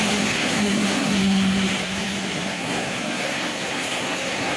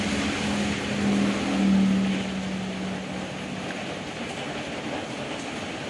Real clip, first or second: second